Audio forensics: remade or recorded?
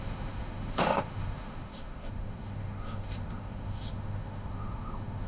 remade